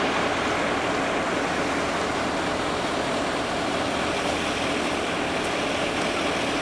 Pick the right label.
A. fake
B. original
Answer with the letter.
B